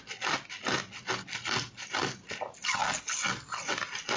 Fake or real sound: real